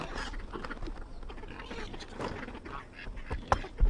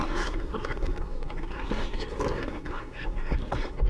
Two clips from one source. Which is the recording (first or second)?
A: first